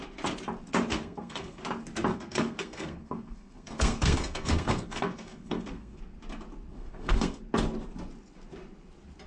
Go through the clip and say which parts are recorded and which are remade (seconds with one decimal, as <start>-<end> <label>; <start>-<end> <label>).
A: 0.0-0.9 recorded; 0.9-1.6 remade; 1.6-2.1 recorded; 2.1-6.0 remade; 6.0-6.7 recorded; 6.7-7.4 remade; 7.4-9.3 recorded